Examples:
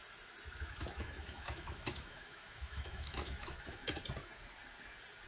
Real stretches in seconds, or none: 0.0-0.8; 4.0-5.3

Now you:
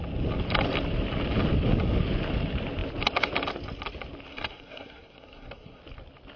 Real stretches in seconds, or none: 0.0-4.3; 5.8-6.4

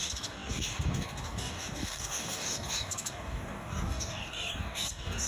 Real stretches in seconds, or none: none

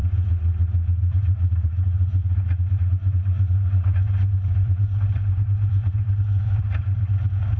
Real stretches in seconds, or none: 0.0-1.1